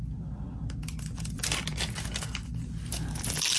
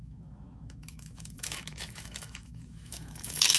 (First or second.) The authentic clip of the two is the first